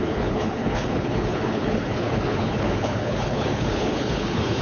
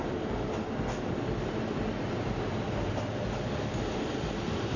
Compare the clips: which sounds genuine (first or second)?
second